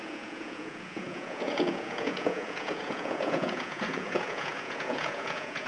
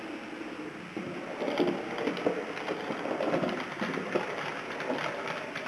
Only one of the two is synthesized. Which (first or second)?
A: first